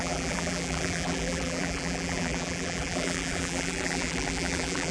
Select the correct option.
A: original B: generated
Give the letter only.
B